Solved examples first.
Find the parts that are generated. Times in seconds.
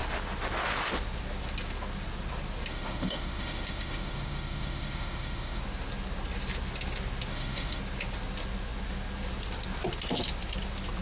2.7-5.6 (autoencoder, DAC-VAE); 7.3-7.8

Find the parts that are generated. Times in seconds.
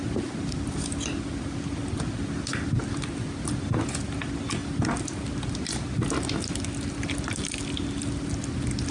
none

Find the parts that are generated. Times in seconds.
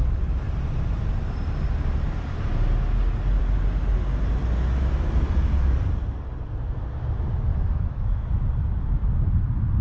7.5-8.2 (autoencoder, DAC-VAE)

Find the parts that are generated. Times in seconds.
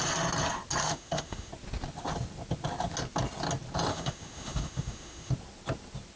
0.8-1.5 (autoencoder, DAC-VAE); 3.9-5.3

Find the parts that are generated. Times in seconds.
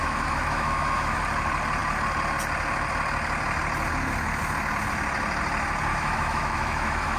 0.0-1.2 (autoencoder, DAC-VAE); 5.9-7.2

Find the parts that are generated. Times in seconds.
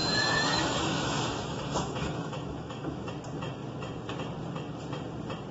0.0-3.1 (autoencoder, DAC-VAE)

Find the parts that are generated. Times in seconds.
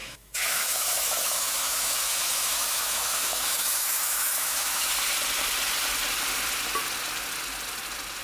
0.0-4.9 (autoencoder, DAC-VAE)